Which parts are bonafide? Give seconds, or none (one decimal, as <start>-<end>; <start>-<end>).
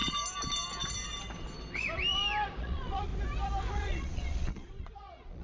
0.0-2.6; 3.1-3.7